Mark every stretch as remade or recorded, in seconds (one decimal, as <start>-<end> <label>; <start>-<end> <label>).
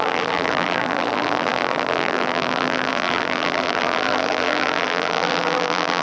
0.0-6.0 remade